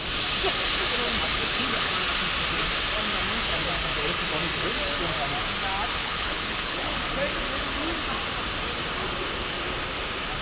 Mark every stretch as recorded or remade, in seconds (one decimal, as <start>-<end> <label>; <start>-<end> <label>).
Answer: 0.0-1.3 recorded; 1.3-1.9 remade; 1.9-6.0 recorded; 6.0-7.0 remade; 7.0-10.4 recorded